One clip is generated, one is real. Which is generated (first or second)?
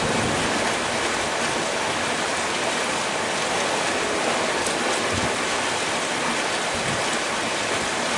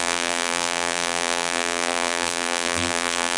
second